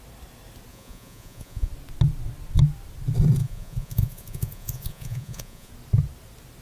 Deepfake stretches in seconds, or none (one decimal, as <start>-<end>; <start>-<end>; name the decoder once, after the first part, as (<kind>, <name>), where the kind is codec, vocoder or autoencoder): 0.7-1.7 (vocoder, Vocos); 3.4-5.7